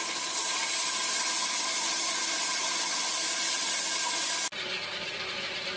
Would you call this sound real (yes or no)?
yes